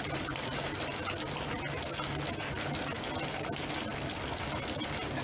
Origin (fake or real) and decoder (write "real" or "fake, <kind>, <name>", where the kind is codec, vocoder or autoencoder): real